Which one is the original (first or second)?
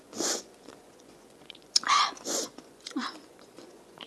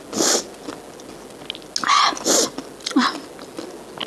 second